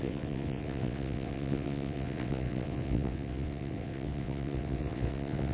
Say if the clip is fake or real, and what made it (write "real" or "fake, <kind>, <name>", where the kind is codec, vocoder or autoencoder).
fake, vocoder, WaveNeXt